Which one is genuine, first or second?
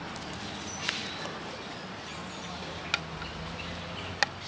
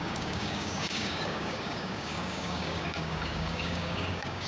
first